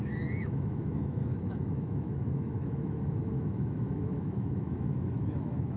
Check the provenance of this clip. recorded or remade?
remade